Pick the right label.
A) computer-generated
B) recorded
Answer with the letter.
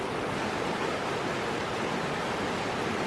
B